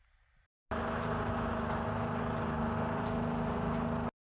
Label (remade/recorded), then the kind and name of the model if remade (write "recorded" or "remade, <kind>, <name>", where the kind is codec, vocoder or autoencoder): recorded